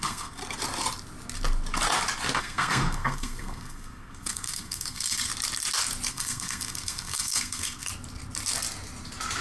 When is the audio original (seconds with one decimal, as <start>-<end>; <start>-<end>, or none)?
0.4-2.4; 5.3-6.1; 7.9-9.4